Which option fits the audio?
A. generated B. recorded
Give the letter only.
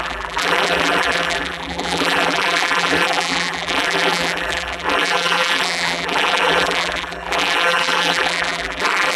A